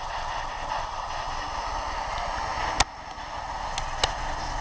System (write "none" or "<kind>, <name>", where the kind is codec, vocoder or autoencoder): none